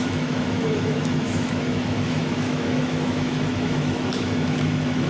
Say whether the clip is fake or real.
fake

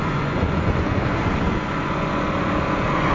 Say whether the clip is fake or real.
fake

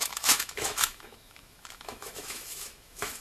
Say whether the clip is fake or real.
fake